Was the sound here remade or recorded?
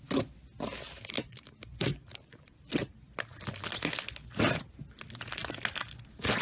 recorded